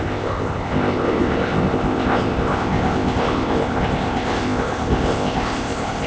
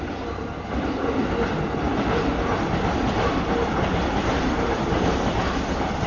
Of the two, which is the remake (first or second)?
first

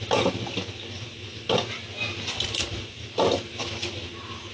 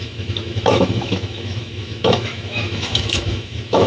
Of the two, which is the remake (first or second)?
second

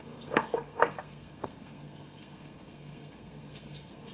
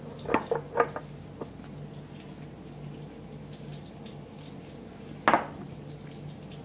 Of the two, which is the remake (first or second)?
first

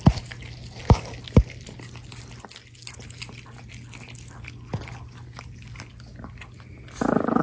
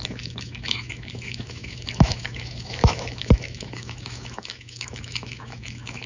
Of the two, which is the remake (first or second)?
second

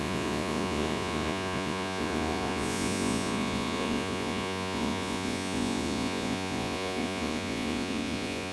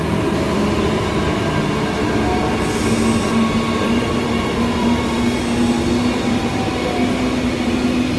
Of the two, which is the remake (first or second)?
first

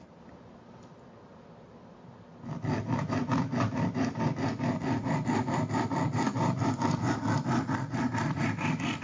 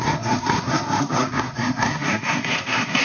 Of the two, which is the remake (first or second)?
second